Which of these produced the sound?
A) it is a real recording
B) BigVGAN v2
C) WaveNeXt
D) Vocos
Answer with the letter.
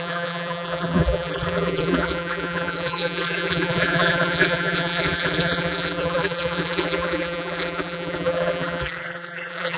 B